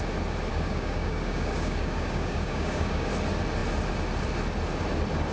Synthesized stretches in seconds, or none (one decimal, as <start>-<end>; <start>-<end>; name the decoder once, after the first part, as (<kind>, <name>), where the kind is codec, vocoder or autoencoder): 0.5-3.1 (codec, DAC)